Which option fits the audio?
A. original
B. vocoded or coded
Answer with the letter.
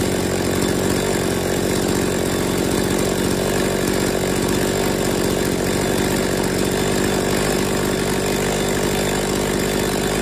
A